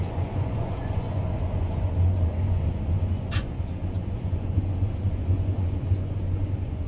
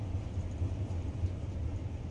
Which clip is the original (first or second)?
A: second